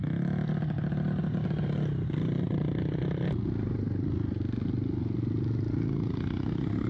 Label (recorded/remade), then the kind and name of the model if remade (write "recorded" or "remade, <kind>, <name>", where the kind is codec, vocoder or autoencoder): recorded